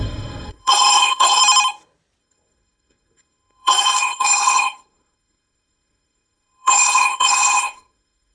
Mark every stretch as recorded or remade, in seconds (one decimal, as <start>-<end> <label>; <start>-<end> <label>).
0.0-1.4 remade; 1.4-2.2 recorded; 2.2-8.3 remade